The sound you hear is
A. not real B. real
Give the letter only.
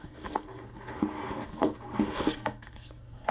A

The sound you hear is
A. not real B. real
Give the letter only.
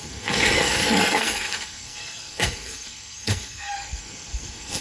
A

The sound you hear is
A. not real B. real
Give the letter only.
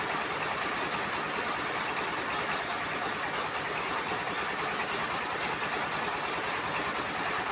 B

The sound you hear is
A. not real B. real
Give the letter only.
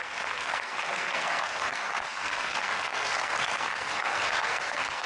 A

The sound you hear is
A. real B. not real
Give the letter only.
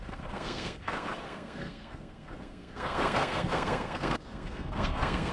B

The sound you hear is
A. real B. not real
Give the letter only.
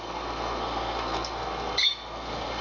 B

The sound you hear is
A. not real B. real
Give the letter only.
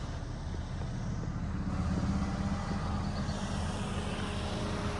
B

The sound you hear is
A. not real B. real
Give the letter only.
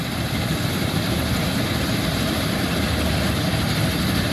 B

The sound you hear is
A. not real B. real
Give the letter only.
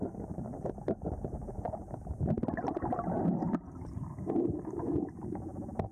B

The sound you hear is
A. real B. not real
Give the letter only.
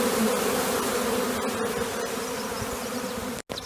A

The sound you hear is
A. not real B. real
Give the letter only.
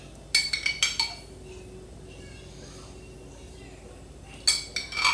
B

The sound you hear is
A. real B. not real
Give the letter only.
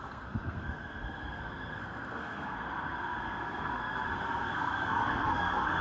B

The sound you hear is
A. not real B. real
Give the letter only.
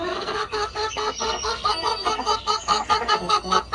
A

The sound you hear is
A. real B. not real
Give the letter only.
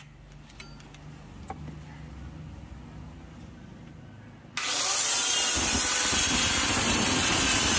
A